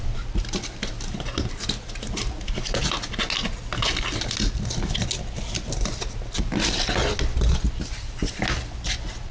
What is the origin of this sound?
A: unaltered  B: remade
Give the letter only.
A